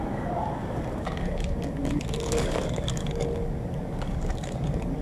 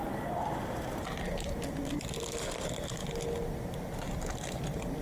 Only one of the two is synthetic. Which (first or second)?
first